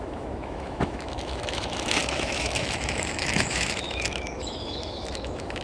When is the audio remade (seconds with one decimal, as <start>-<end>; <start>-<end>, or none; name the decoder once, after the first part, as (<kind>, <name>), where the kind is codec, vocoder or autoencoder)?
0.0-5.6 (autoencoder, DAC-VAE)